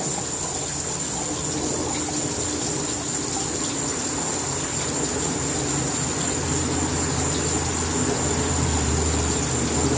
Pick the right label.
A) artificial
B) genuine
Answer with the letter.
B